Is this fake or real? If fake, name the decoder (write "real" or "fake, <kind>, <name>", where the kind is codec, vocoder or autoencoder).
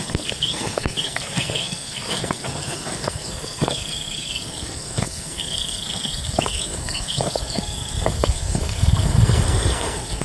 fake, codec, SNAC